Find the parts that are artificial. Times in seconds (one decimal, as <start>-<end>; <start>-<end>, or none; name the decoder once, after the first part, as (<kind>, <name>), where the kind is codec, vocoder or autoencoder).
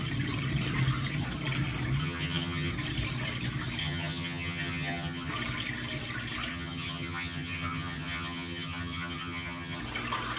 2.0-2.7 (vocoder, HiFi-GAN); 3.8-5.3; 6.5-9.8